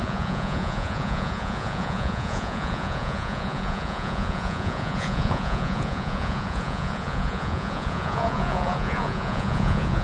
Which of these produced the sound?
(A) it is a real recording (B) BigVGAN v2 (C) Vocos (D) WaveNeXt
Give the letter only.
C